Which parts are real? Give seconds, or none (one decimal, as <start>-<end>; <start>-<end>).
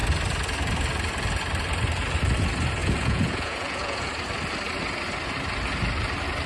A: 0.0-2.8; 4.1-6.5